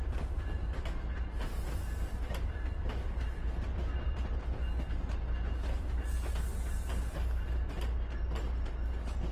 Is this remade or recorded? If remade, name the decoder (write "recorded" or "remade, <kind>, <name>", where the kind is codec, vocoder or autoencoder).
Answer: recorded